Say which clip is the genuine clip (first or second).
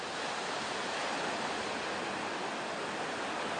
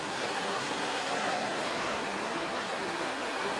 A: first